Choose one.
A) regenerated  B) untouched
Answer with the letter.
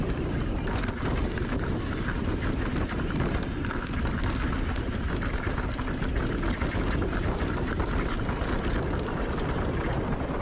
B